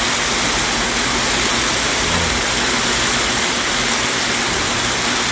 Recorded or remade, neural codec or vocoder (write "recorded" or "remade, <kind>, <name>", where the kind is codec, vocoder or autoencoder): recorded